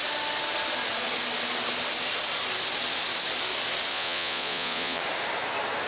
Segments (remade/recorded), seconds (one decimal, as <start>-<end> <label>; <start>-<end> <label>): 0.0-3.9 recorded; 3.9-5.0 remade; 5.0-5.9 recorded